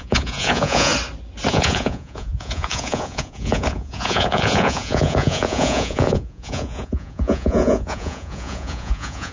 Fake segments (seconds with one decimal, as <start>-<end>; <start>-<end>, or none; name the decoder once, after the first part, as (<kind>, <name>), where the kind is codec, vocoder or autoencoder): 0.0-0.9 (vocoder, Vocos); 1.5-9.3